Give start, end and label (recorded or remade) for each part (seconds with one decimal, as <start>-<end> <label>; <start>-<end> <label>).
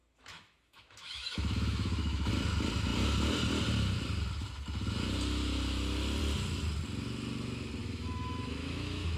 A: 0.0-2.3 remade; 2.3-7.8 recorded; 7.8-9.2 remade